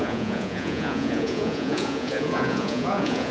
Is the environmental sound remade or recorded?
remade